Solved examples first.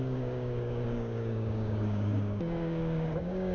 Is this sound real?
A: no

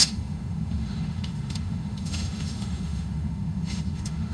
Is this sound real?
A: no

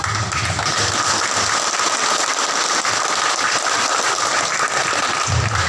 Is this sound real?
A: yes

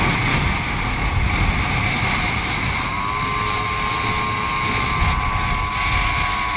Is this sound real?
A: yes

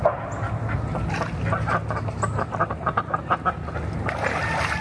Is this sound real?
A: yes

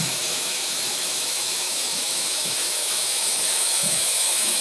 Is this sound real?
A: no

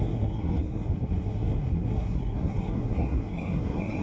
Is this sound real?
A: no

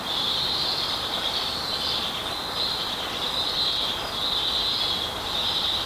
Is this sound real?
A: yes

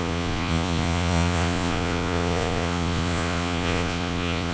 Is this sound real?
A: no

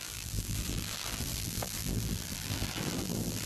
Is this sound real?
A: no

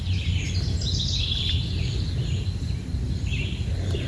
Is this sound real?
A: yes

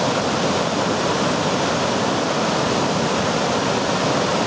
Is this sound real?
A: yes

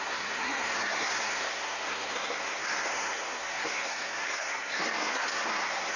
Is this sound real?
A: no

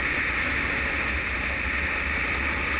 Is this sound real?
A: yes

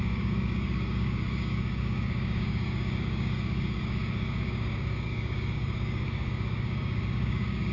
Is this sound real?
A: no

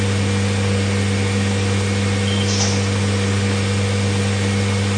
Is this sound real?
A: yes